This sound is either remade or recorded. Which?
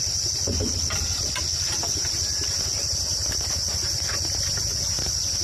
recorded